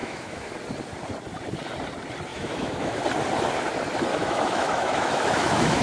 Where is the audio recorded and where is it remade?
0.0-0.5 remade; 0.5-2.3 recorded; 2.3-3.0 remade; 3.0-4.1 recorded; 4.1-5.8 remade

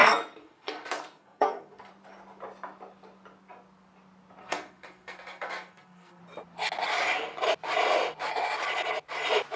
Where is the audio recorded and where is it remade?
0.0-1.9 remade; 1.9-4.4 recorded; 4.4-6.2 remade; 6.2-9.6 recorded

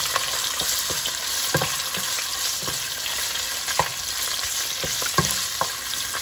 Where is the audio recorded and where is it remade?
0.0-6.2 recorded

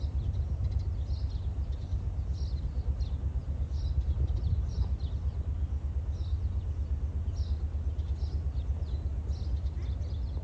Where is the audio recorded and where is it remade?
0.0-10.4 recorded